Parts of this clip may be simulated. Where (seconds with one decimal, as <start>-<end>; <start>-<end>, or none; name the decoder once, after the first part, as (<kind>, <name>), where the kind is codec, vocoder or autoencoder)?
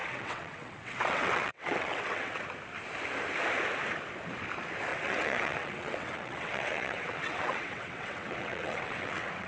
0.0-2.3 (vocoder, WaveNeXt); 4.9-9.5